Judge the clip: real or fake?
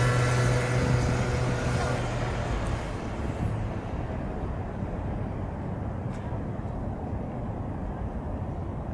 real